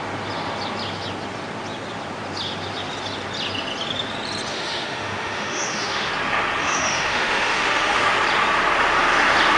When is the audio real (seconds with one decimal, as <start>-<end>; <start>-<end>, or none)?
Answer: 0.0-4.5; 6.1-6.6; 8.0-9.6